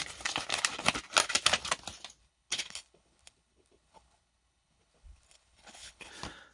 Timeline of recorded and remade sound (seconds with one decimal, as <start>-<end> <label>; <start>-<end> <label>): 0.0-2.2 recorded; 2.2-6.1 remade; 6.1-6.5 recorded